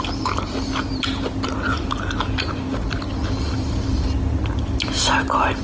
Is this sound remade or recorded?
recorded